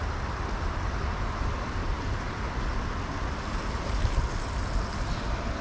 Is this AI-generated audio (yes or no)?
no